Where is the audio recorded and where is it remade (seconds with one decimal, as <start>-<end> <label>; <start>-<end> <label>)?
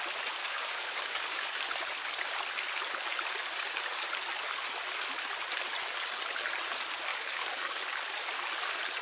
0.0-0.4 recorded; 0.4-1.6 remade; 1.6-7.1 recorded; 7.1-7.8 remade; 7.8-9.0 recorded